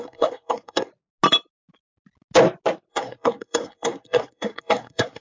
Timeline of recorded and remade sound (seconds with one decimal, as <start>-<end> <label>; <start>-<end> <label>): 0.0-0.9 remade; 0.9-2.9 recorded; 2.9-5.2 remade